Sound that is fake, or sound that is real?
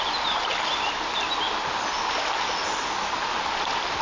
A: real